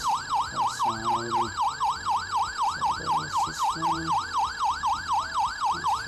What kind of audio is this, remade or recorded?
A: remade